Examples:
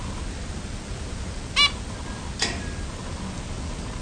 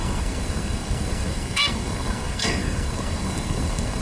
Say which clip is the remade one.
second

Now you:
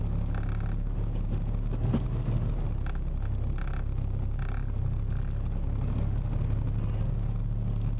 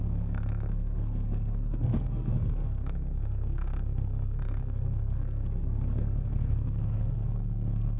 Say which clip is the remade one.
second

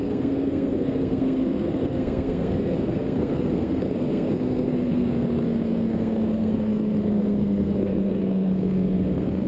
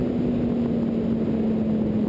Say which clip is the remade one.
first